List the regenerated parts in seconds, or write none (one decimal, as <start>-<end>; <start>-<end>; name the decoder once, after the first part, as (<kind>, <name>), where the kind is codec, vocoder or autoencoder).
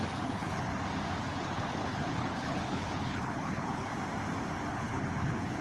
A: 0.0-0.7 (codec, HILCodec); 1.2-3.9; 4.7-5.6